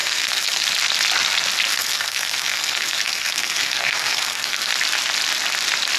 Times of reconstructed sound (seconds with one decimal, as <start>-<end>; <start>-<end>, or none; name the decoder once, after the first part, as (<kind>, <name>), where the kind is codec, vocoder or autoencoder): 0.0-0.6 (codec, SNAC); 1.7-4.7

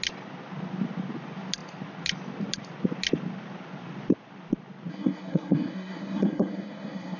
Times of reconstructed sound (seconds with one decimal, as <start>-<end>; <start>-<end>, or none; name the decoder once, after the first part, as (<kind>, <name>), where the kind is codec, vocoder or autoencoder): 4.9-7.2 (codec, SNAC)

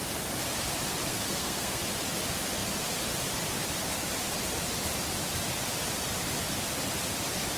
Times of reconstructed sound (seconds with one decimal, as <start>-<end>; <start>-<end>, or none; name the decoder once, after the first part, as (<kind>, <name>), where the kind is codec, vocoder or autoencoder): 1.1-1.8 (codec, SNAC)